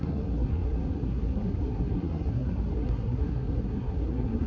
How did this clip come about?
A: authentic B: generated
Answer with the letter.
B